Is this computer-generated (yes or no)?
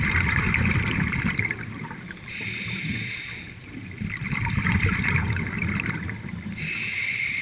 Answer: yes